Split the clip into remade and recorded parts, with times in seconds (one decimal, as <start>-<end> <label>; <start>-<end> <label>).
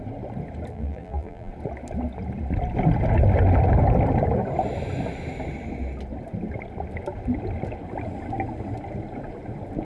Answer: 0.0-0.7 recorded; 0.7-1.5 remade; 1.5-9.8 recorded